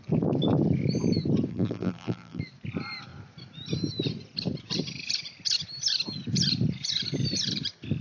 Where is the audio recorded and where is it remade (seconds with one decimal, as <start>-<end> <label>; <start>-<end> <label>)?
0.0-1.5 recorded; 1.5-2.4 remade; 2.4-8.0 recorded